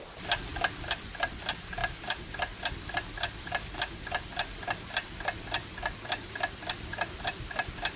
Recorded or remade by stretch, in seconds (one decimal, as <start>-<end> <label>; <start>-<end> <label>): 0.0-0.5 recorded; 0.5-1.3 remade; 1.3-1.8 recorded; 1.8-2.6 remade; 2.6-3.9 recorded; 3.9-8.0 remade